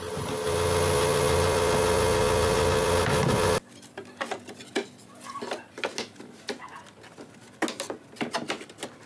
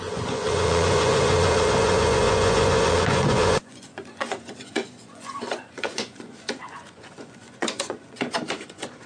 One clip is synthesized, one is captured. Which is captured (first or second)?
first